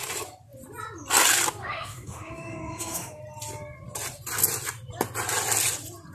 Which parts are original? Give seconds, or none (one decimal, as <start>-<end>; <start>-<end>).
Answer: 0.0-1.6; 3.2-6.1